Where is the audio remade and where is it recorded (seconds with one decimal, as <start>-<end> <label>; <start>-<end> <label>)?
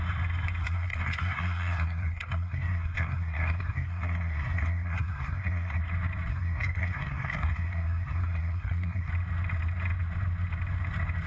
0.0-0.6 recorded; 0.6-5.8 remade; 5.8-6.3 recorded; 6.3-9.1 remade; 9.1-11.3 recorded